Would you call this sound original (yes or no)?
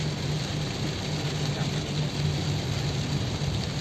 yes